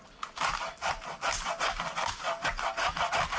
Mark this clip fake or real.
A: real